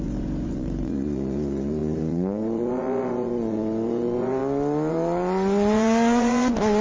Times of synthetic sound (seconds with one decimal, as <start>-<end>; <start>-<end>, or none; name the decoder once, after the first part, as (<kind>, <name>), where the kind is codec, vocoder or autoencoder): 0.0-4.4 (vocoder, Vocos); 4.9-6.8